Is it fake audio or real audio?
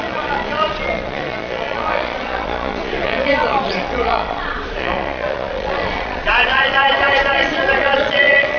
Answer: fake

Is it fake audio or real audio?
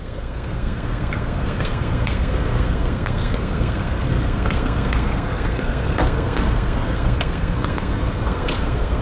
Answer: fake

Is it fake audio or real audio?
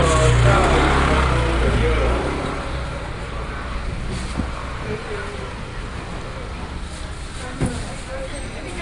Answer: real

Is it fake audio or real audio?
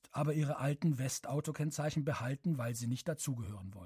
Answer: real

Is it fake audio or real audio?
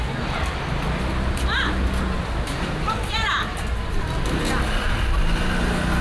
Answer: real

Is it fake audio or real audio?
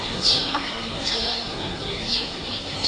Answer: fake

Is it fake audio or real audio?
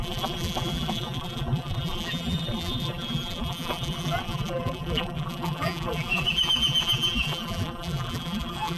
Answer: fake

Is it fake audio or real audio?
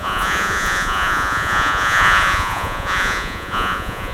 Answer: fake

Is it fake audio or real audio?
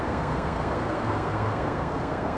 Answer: fake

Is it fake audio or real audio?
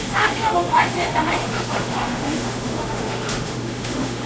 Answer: fake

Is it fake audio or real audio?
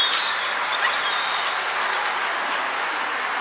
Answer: real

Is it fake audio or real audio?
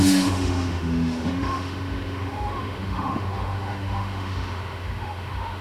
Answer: fake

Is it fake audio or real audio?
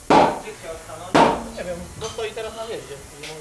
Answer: real